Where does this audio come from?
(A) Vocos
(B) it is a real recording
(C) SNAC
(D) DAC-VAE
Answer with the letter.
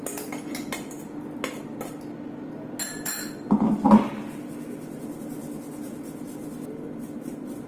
B